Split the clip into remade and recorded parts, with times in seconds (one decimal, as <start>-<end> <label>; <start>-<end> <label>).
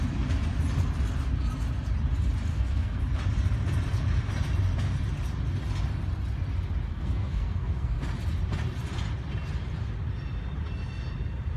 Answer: 0.0-2.5 recorded; 2.5-3.0 remade; 3.0-6.9 recorded; 6.9-8.0 remade; 8.0-11.6 recorded